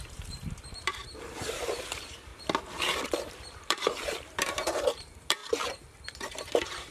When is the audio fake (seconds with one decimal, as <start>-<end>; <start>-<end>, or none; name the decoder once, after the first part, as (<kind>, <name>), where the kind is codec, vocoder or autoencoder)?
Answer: 0.0-2.3 (vocoder, BigVGAN v2); 3.3-5.4; 6.3-6.9